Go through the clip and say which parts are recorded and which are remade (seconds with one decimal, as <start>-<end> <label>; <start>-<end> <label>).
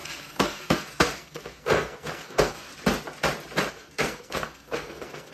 0.0-2.7 remade; 2.7-3.7 recorded; 3.7-5.3 remade